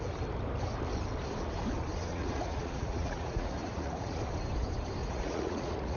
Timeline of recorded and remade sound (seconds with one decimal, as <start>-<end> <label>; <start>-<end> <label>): 0.0-2.1 recorded; 2.1-4.2 remade; 4.2-5.0 recorded; 5.0-6.0 remade